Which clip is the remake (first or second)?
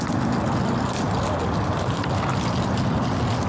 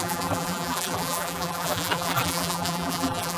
second